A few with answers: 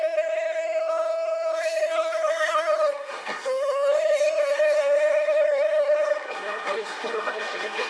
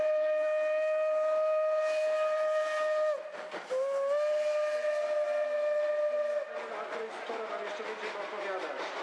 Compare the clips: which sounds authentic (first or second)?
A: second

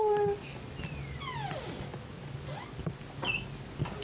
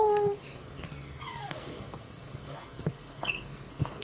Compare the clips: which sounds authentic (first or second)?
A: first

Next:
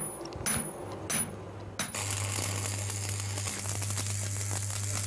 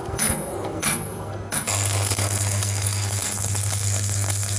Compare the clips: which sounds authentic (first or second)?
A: first